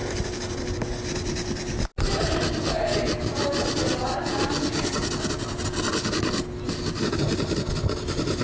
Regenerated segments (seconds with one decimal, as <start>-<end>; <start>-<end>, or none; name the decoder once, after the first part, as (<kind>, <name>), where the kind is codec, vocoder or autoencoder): none